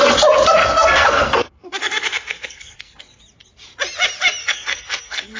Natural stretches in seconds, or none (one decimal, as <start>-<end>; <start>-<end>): 0.0-0.6; 3.2-4.4